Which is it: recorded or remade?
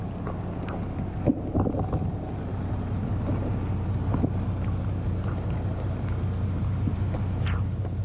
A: recorded